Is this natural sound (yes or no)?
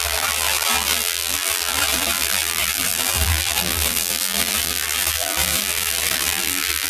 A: no